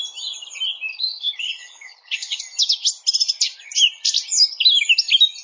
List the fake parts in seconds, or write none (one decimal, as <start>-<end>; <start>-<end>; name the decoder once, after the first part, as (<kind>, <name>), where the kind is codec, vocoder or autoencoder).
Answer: 0.9-2.4 (codec, HILCodec)